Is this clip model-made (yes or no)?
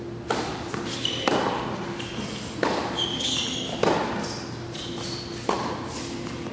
no